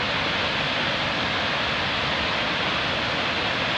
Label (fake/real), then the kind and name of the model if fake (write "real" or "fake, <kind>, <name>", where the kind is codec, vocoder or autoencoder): real